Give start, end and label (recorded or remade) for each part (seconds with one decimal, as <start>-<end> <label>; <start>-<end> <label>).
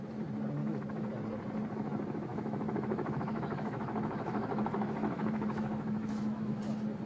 0.0-0.6 recorded; 0.6-1.1 remade; 1.1-2.3 recorded; 2.3-6.6 remade; 6.6-7.1 recorded